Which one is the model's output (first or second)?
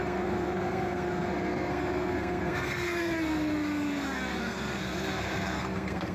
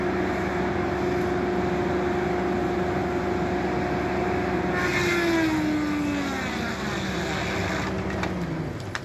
first